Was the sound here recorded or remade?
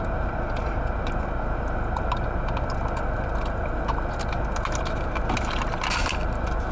recorded